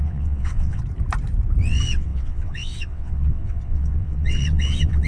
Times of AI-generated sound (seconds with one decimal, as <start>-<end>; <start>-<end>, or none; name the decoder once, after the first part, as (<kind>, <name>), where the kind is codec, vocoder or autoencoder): 0.0-0.8 (vocoder, WaveNeXt); 1.6-5.1